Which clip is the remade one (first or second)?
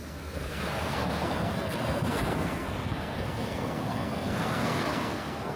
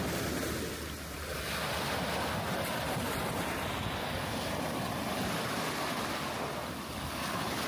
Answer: first